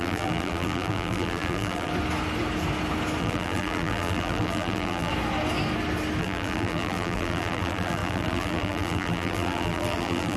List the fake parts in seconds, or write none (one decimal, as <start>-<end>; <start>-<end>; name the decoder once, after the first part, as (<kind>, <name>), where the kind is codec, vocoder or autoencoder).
0.0-1.9 (vocoder, BigVGAN v2); 3.2-5.1; 6.2-10.4